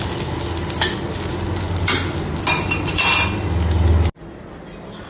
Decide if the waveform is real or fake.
real